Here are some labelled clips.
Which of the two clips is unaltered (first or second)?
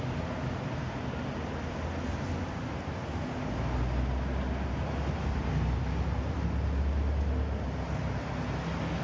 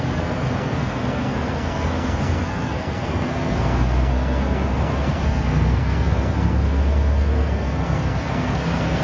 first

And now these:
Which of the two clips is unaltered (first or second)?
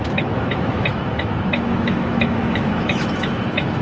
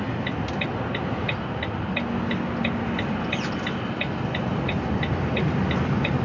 second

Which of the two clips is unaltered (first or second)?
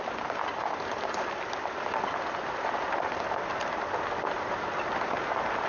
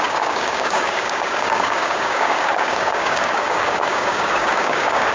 first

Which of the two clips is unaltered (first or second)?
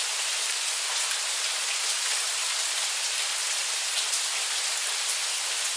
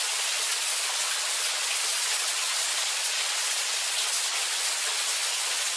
first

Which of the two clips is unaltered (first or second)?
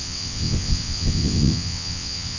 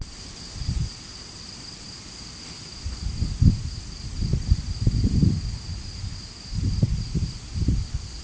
second